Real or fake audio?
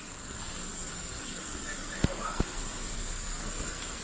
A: fake